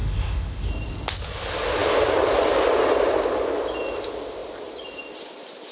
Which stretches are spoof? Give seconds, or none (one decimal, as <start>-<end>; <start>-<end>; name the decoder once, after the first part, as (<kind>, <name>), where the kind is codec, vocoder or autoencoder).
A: 0.0-0.7 (autoencoder, DAC-VAE)